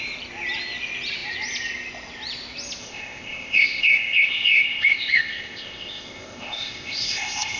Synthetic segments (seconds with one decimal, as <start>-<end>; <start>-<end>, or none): 2.8-7.6